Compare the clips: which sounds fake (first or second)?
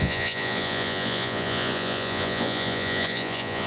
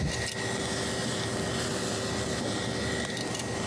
first